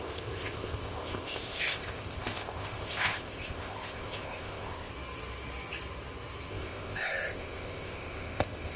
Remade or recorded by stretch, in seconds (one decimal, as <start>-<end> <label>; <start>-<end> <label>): 0.0-4.9 remade; 4.9-6.5 recorded; 6.5-8.8 remade